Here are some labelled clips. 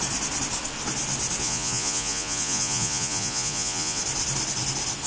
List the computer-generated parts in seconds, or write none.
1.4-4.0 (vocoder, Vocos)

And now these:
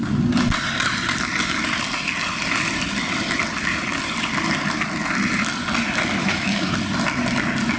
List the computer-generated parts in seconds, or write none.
6.2-6.7 (autoencoder, DAC-VAE)